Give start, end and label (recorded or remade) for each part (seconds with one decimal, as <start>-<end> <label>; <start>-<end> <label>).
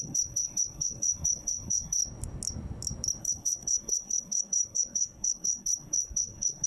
0.0-2.0 remade; 2.0-3.2 recorded; 3.2-6.7 remade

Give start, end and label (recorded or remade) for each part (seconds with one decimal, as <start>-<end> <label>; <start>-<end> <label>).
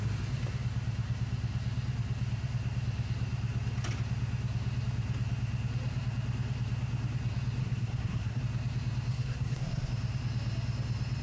0.0-7.6 recorded; 7.6-8.4 remade; 8.4-9.1 recorded; 9.1-9.9 remade; 9.9-11.2 recorded